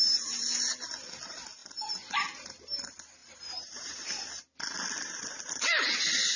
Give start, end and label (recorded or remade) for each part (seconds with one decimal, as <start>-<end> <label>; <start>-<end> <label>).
0.0-1.6 recorded; 1.6-2.6 remade; 2.6-3.2 recorded; 3.2-3.9 remade; 3.9-6.4 recorded